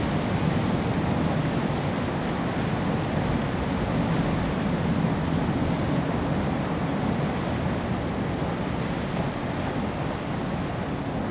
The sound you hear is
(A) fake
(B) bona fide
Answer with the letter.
B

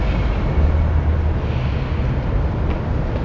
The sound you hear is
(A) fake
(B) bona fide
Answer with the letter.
B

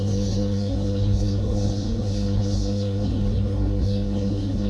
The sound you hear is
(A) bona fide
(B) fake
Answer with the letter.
B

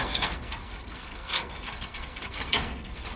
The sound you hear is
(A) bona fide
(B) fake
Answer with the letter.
B